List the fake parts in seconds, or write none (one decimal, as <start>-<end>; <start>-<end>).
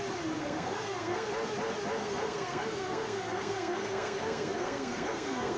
0.4-1.3; 2.0-5.6